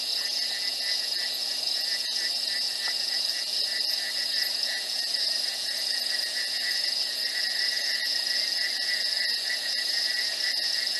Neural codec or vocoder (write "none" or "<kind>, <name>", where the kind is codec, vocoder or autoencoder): vocoder, Vocos